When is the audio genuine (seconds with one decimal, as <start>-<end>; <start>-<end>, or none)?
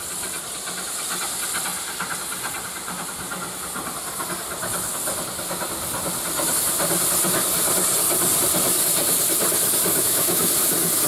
0.0-9.9; 10.5-11.1